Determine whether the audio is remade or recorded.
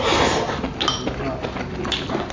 recorded